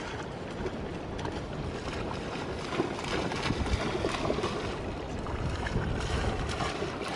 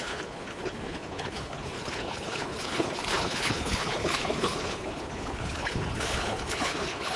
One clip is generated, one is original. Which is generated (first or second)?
second